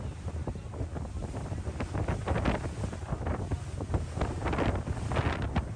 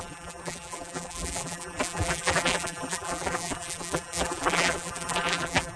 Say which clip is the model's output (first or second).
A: second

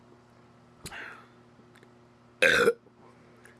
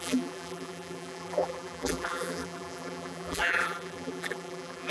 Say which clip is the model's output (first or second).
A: second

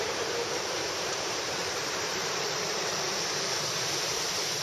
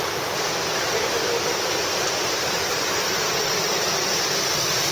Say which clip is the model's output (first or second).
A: first